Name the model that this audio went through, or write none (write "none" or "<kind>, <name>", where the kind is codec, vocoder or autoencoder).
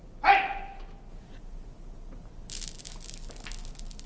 none